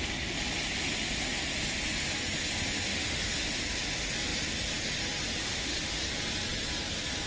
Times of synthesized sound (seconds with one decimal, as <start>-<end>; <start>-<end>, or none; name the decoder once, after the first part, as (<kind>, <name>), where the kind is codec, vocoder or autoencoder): 2.9-3.5 (autoencoder, DAC-VAE); 5.4-6.1